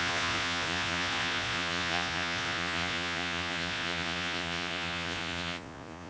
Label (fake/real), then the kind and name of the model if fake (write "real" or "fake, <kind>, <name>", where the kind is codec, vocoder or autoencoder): fake, vocoder, Vocos